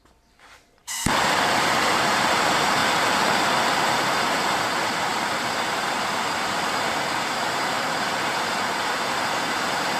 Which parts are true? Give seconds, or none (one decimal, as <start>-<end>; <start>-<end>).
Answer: 2.8-3.8